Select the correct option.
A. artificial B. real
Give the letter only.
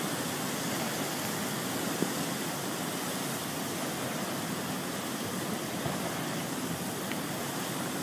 B